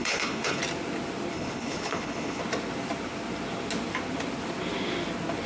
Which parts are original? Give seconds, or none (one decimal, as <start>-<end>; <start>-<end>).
0.6-1.3; 2.4-5.5